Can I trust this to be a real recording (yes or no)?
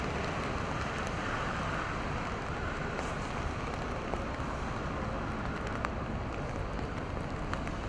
yes